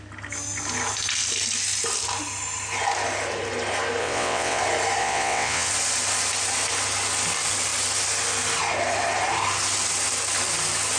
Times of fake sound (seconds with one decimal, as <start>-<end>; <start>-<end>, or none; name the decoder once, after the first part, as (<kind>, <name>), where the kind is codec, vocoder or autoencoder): 4.0-4.6 (vocoder, WaveNeXt); 5.0-5.7